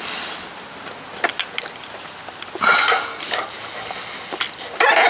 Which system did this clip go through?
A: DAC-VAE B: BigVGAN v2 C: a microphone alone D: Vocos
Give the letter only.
C